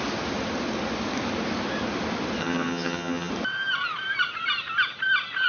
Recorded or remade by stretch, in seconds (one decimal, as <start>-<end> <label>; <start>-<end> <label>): 0.0-2.4 recorded; 2.4-3.3 remade; 3.3-5.5 recorded